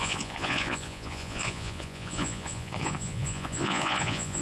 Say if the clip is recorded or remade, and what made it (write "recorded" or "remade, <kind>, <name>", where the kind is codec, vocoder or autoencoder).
remade, vocoder, Vocos